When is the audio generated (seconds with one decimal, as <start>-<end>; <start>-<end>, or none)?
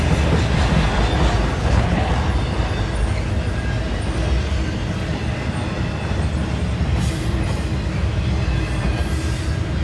1.6-2.1